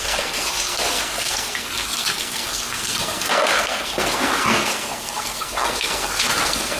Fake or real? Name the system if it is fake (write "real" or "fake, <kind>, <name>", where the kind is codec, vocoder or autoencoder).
fake, codec, SNAC